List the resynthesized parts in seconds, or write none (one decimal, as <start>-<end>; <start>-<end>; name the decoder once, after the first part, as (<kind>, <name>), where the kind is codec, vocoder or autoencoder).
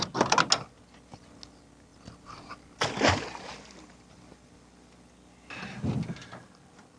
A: none